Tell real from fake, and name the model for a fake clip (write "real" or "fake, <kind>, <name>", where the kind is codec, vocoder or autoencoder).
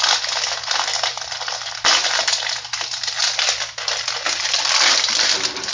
real